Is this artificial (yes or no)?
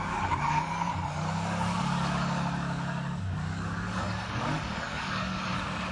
yes